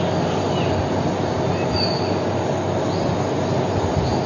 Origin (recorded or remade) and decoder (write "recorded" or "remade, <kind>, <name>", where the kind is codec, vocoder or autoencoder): recorded